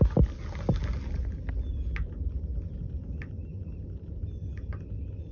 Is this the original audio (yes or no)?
yes